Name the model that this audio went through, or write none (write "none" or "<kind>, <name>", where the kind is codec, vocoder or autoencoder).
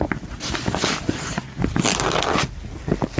none